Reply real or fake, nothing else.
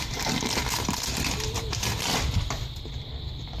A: real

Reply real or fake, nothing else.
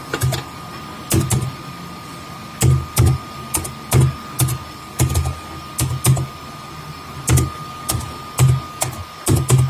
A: real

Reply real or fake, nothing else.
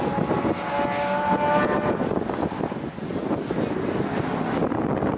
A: real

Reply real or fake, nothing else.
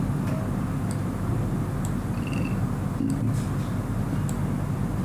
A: real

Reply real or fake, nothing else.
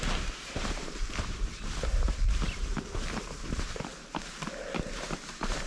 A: real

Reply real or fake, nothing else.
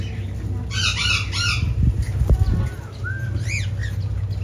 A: real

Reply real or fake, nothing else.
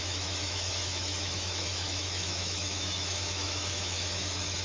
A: fake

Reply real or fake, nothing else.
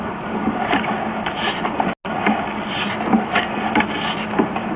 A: real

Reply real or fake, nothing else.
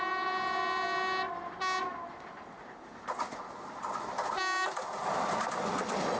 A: real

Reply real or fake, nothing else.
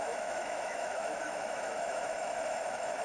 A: fake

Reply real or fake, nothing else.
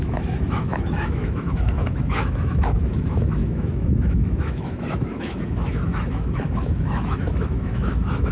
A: fake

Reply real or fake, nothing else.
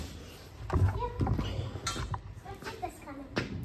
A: real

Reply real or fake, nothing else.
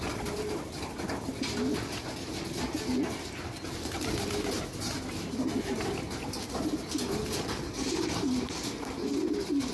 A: real